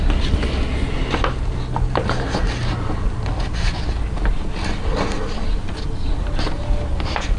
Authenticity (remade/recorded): recorded